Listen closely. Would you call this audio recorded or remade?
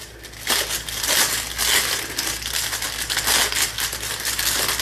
recorded